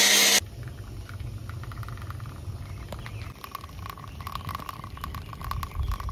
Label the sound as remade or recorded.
recorded